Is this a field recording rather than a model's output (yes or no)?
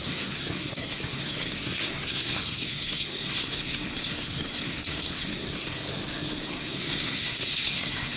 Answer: no